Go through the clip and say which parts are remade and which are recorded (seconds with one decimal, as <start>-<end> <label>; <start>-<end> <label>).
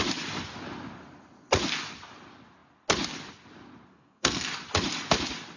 0.0-3.9 recorded; 3.9-4.5 remade; 4.5-5.6 recorded